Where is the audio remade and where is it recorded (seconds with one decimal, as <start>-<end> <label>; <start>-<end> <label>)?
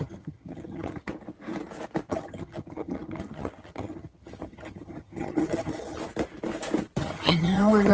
0.0-1.1 remade; 1.1-2.1 recorded; 2.1-6.0 remade; 6.0-7.0 recorded; 7.0-7.9 remade